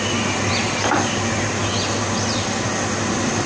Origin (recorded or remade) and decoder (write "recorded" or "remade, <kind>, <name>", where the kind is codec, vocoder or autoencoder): recorded